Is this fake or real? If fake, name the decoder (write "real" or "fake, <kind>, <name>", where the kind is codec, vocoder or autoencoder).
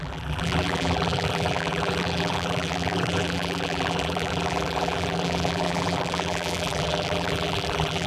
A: fake, vocoder, BigVGAN v2